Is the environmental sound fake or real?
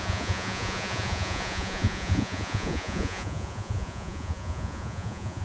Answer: fake